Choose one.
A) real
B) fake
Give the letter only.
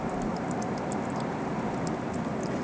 A